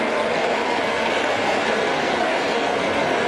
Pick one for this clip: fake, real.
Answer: fake